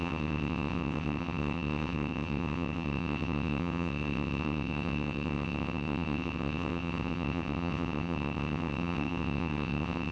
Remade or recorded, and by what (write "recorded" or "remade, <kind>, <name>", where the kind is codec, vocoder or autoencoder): remade, vocoder, WaveNeXt